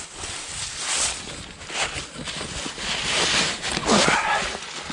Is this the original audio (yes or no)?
yes